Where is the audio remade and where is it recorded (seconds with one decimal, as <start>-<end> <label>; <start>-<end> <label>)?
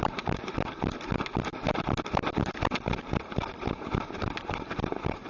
0.0-0.5 remade; 0.5-3.1 recorded; 3.1-5.3 remade